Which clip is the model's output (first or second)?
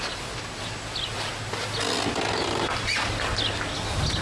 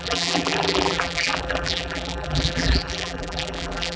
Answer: second